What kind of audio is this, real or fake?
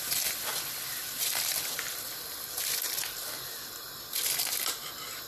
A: real